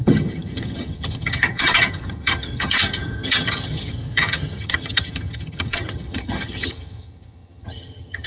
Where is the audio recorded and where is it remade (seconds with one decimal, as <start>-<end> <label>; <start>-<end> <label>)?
0.0-8.3 remade